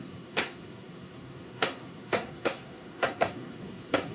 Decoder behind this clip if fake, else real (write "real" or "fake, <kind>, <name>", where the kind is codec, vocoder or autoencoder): fake, codec, SNAC